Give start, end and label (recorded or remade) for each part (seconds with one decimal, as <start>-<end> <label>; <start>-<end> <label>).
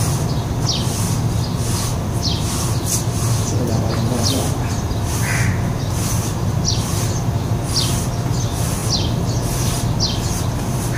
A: 0.0-11.0 recorded